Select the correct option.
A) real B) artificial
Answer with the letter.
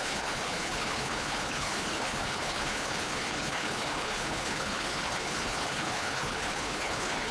B